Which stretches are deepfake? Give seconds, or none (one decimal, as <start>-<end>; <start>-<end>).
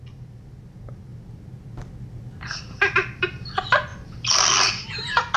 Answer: 3.9-5.4